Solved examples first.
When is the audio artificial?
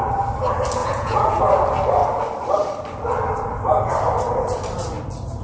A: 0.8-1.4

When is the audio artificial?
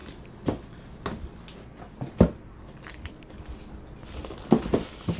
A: none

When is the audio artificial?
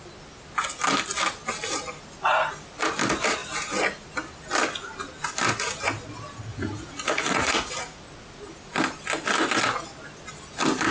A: 6.5-8.0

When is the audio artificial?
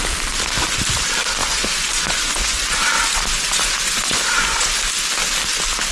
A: 1.4-4.8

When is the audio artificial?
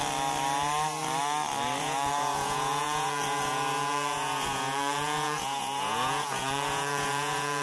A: 1.8-7.6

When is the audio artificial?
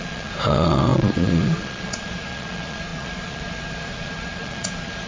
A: 0.0-5.1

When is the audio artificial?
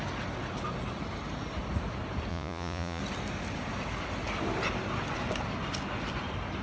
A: 2.3-3.0